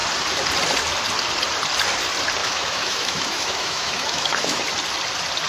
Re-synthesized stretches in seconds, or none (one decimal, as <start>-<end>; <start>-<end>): 2.4-4.6